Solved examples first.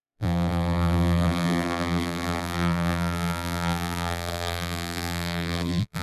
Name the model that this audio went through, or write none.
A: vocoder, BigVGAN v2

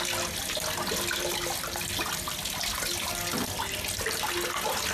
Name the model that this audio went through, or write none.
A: none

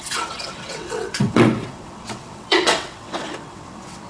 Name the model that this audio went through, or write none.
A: vocoder, WaveNeXt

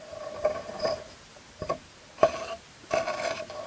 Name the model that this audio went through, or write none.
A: vocoder, BigVGAN v2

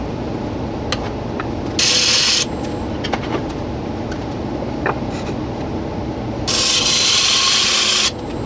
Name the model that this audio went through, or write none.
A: none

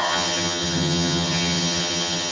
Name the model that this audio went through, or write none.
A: vocoder, HiFi-GAN